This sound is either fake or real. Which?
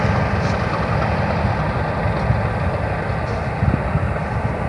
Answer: real